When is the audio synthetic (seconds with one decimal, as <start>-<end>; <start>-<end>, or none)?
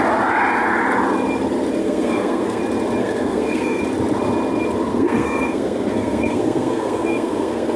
1.8-2.6; 3.0-3.8; 4.9-7.8